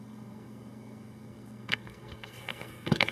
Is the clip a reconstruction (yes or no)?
yes